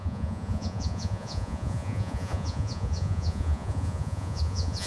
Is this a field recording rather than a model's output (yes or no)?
no